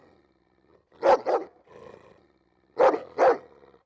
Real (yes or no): yes